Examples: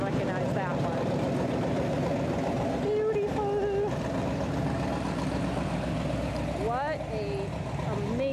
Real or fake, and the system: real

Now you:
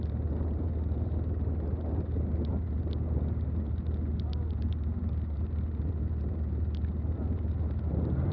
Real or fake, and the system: real